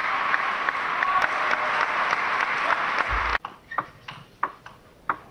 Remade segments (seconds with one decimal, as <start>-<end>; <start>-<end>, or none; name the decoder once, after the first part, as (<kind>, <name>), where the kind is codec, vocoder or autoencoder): none